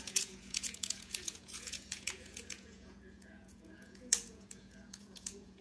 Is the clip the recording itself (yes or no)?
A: no